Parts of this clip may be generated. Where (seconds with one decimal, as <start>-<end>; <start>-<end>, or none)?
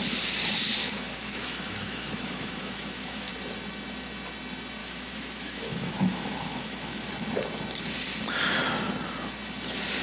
0.8-3.3; 4.8-7.1